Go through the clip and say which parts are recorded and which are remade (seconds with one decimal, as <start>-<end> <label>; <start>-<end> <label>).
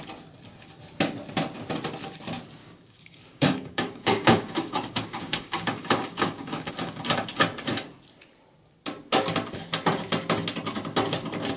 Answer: 0.0-2.6 recorded; 2.6-6.7 remade; 6.7-11.6 recorded